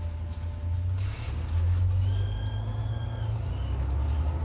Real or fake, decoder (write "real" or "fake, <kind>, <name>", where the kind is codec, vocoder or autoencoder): real